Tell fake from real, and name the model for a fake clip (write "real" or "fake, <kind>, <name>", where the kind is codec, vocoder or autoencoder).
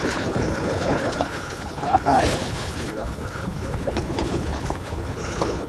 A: fake, codec, HILCodec